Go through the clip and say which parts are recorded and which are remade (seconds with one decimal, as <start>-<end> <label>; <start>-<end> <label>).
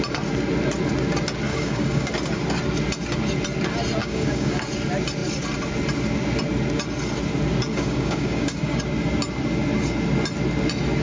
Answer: 0.0-1.5 recorded; 1.5-2.1 remade; 2.1-4.0 recorded; 4.0-4.6 remade; 4.6-7.7 recorded; 7.7-8.8 remade; 8.8-11.0 recorded